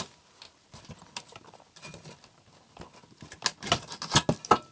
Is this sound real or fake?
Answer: real